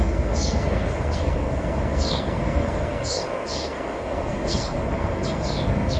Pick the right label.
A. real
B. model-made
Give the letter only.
B